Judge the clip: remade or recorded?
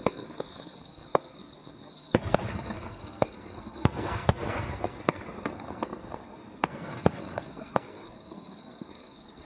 remade